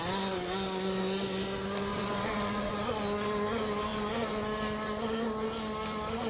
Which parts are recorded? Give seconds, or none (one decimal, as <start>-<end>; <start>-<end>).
0.0-1.9; 2.7-6.3